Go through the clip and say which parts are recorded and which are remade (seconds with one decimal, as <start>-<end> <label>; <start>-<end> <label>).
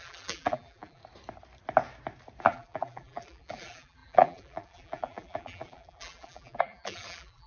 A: 0.0-1.0 remade; 1.0-2.4 recorded; 2.4-7.5 remade